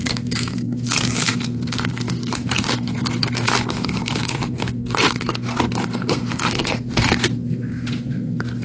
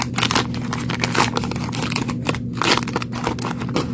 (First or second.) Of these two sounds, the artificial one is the first